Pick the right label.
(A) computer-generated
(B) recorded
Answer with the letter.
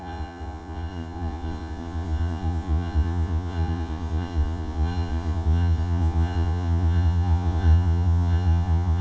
A